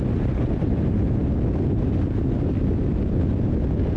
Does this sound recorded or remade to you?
recorded